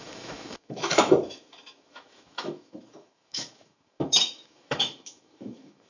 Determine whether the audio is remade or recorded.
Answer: remade